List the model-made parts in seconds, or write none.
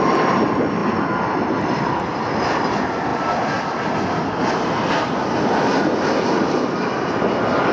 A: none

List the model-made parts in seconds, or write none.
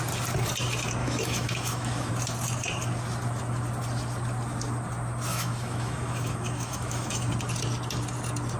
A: 1.0-2.1 (autoencoder, DAC-VAE); 5.3-7.3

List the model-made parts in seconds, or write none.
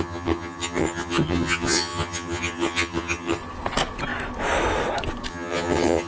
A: 0.0-3.4 (vocoder, HiFi-GAN); 5.3-6.1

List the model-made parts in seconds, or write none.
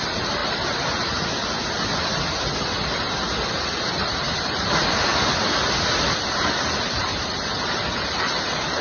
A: none